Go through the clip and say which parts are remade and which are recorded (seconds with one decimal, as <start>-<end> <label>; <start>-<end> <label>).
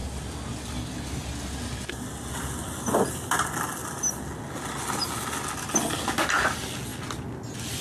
0.0-7.8 recorded